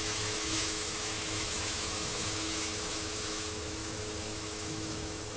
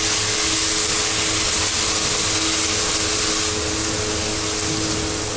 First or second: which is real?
second